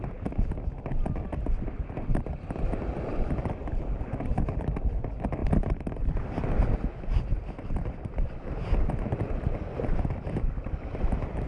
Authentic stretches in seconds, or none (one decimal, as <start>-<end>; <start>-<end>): 0.0-11.5